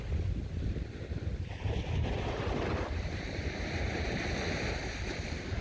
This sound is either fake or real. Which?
real